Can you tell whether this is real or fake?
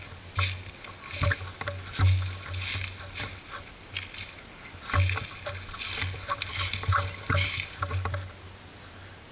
real